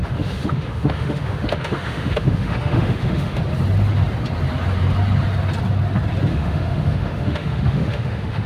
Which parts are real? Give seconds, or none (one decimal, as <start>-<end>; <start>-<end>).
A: 3.4-6.3